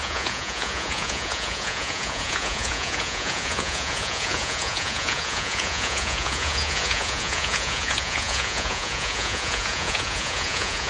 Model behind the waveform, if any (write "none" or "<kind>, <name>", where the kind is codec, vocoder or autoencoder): vocoder, Vocos